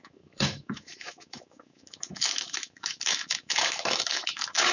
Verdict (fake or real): fake